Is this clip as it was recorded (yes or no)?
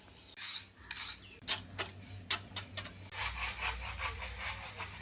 yes